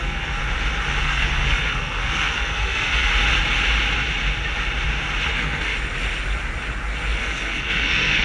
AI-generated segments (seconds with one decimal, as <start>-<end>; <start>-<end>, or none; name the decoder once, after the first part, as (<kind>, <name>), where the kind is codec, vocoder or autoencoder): 0.0-0.4 (codec, SNAC); 1.0-3.1; 5.3-5.7; 7.2-8.2